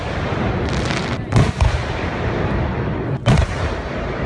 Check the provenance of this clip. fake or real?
real